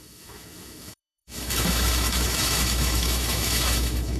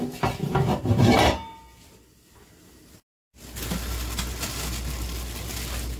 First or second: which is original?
second